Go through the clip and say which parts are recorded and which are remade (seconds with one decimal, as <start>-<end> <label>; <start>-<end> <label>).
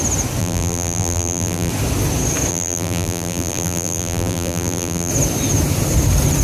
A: 0.0-0.4 recorded; 0.4-1.7 remade; 1.7-2.5 recorded; 2.5-5.1 remade; 5.1-6.4 recorded